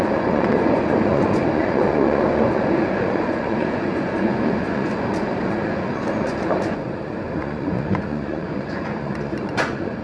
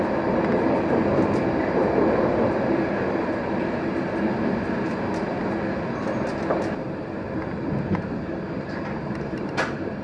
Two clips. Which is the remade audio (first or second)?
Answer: first